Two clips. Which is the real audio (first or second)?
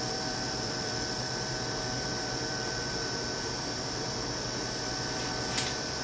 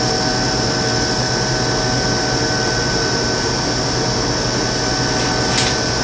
second